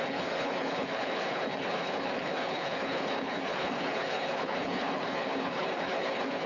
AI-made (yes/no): yes